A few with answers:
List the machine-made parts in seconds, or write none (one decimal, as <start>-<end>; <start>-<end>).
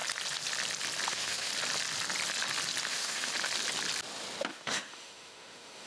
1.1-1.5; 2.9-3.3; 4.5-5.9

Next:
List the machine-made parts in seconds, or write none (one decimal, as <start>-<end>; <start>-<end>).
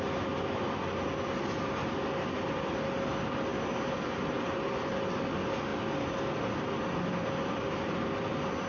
none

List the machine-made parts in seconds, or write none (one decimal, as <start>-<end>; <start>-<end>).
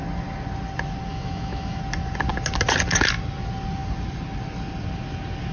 1.1-1.8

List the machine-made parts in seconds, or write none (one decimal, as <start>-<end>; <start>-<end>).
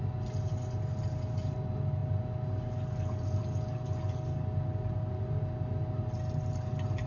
none